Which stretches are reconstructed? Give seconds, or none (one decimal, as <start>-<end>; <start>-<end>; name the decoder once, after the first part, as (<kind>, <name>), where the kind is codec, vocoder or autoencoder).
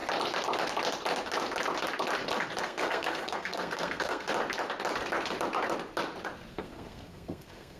2.6-4.3 (codec, SNAC); 6.5-7.8